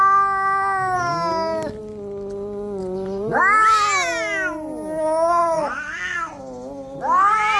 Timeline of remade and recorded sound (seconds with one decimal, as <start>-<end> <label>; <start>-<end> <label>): 0.0-2.8 recorded; 2.8-3.4 remade; 3.4-5.4 recorded; 5.4-6.4 remade; 6.4-7.6 recorded